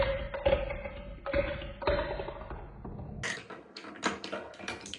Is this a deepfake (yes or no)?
no